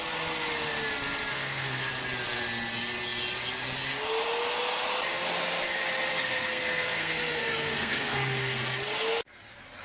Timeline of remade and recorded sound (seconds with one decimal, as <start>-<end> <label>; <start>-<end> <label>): 0.0-1.3 recorded; 1.3-1.9 remade; 1.9-6.1 recorded; 6.1-8.6 remade; 8.6-9.8 recorded